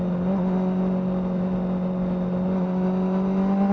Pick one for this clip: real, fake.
real